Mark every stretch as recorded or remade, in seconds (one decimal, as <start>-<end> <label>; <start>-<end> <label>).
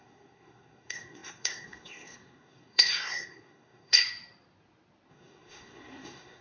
0.0-4.0 remade; 4.0-5.1 recorded; 5.1-6.4 remade